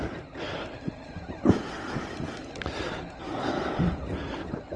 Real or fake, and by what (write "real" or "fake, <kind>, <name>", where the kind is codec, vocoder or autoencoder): real